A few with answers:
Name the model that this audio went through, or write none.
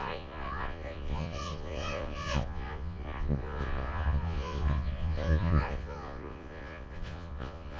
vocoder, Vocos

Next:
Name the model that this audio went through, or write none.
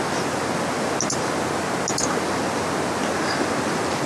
none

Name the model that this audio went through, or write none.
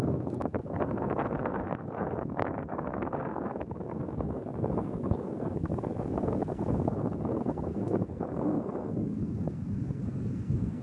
codec, SNAC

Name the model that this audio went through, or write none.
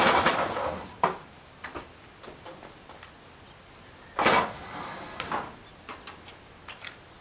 none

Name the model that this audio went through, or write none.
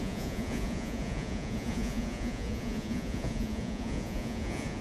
vocoder, Vocos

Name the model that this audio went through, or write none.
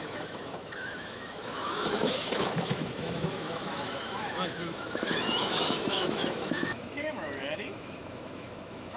autoencoder, DAC-VAE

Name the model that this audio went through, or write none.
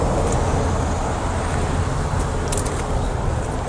none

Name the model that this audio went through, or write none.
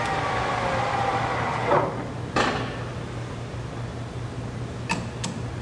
none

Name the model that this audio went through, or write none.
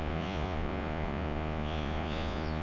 vocoder, Vocos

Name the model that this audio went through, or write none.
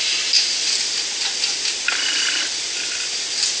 none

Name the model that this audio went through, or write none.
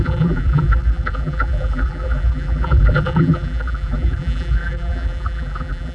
vocoder, BigVGAN v2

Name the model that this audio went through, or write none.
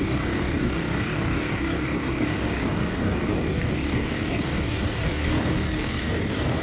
codec, DAC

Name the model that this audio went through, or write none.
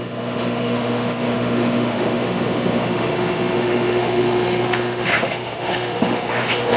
autoencoder, DAC-VAE